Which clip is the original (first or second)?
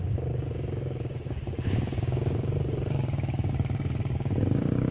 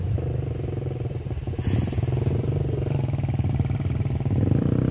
second